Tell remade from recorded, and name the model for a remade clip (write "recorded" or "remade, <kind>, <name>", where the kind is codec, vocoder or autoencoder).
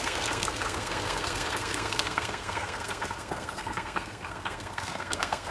remade, codec, SNAC